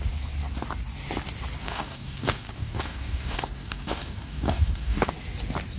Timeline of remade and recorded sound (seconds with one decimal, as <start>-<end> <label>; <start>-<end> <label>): 0.0-1.6 recorded; 1.6-5.1 remade; 5.1-5.8 recorded